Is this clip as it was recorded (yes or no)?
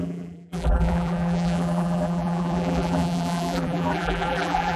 no